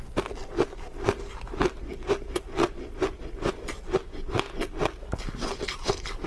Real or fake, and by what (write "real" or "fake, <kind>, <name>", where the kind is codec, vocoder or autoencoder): real